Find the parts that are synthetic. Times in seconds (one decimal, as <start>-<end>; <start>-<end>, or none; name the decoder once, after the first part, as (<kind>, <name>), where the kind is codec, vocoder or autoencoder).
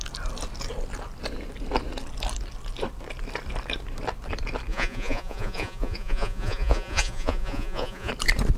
4.7-8.1 (vocoder, Vocos)